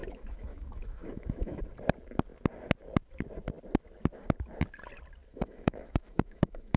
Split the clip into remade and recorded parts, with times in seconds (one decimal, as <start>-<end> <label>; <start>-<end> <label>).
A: 0.0-1.6 remade; 1.6-5.3 recorded; 5.3-6.8 remade